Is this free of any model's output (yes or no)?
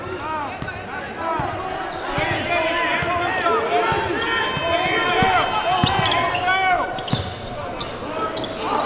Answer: yes